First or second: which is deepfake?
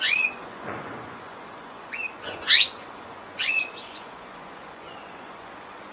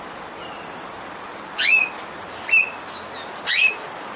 first